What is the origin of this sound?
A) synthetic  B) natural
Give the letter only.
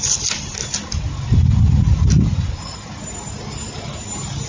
B